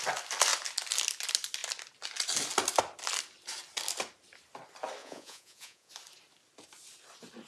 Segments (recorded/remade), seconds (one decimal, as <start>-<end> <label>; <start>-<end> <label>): 0.0-5.0 recorded; 5.0-5.9 remade; 5.9-7.5 recorded